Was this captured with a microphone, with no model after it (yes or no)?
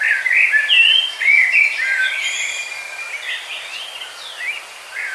yes